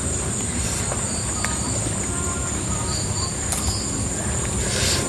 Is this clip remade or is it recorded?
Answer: recorded